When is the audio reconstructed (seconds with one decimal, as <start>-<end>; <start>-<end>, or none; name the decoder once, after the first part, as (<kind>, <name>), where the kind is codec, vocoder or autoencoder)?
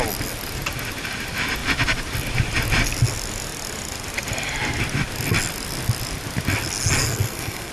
7.0-7.7 (codec, SNAC)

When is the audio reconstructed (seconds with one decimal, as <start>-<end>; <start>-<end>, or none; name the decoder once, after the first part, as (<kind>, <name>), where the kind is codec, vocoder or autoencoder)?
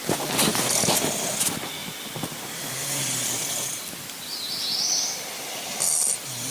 none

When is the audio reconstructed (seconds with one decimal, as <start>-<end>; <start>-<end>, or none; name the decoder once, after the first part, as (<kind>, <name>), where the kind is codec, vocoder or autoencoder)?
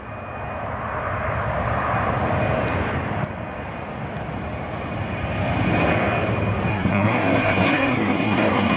6.7-8.8 (codec, SNAC)